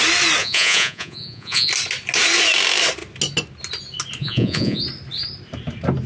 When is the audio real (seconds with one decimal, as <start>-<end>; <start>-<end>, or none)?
0.0-0.4; 1.7-4.2; 4.8-6.1